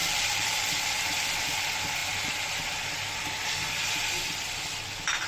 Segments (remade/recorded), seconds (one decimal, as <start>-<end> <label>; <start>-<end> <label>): 0.0-0.6 remade; 0.6-5.3 recorded